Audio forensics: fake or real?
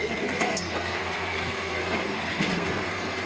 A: fake